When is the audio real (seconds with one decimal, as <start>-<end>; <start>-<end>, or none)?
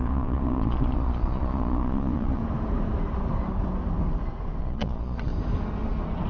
2.4-4.6; 5.3-6.3